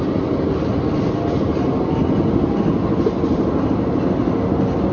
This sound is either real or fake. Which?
real